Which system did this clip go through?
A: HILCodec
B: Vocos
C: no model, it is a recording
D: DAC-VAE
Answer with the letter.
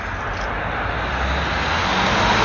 C